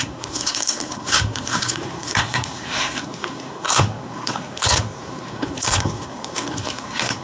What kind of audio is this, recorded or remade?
remade